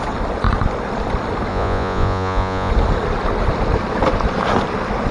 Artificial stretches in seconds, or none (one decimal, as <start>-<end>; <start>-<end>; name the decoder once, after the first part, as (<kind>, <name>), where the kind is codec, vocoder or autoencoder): 1.5-2.7 (vocoder, Vocos)